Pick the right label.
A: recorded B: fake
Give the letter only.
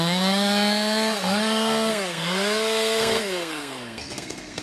B